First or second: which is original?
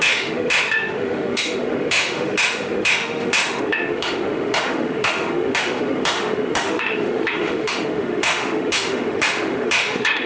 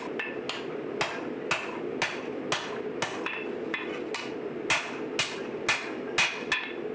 second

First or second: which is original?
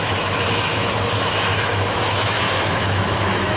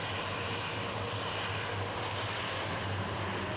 second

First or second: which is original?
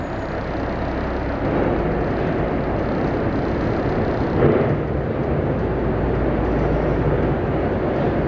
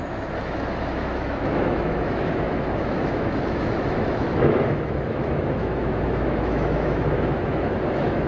first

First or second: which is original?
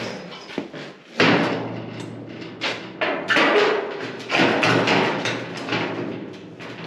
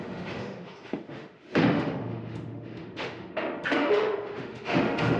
first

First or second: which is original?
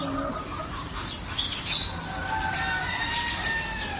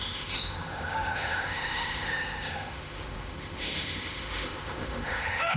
first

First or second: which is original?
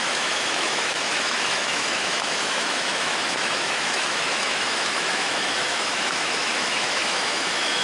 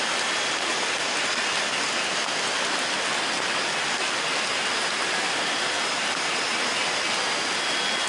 second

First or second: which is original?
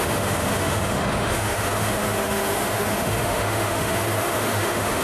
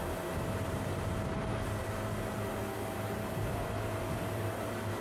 second